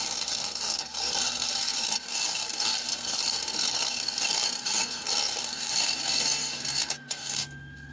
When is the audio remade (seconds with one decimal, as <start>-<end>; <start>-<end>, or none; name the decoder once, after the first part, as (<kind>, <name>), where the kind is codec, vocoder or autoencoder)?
0.0-7.9 (codec, SNAC)